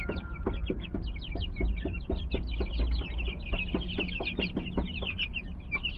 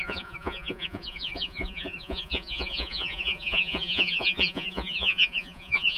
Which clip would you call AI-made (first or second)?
second